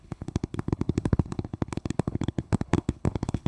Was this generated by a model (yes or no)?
yes